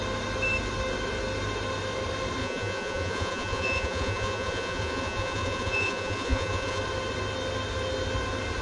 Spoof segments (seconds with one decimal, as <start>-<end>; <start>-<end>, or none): 2.4-6.8